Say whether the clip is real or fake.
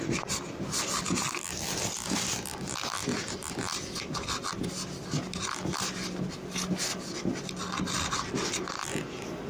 real